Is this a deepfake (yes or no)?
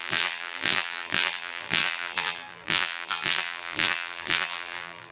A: yes